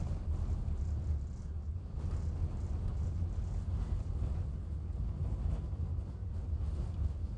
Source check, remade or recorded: recorded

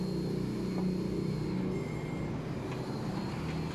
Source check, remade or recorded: recorded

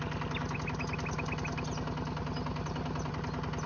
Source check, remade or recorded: recorded